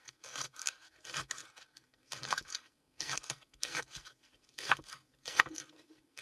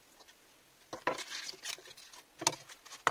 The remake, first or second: first